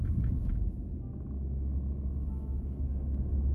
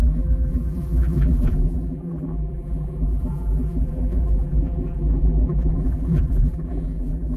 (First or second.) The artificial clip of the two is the second